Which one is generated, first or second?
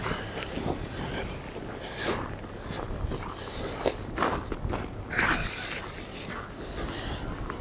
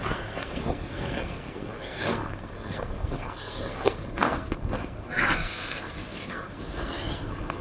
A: second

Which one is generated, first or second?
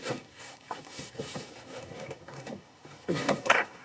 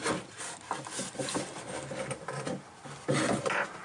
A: first